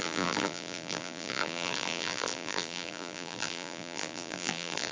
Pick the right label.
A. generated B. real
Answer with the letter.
A